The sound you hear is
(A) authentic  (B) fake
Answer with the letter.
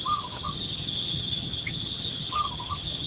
B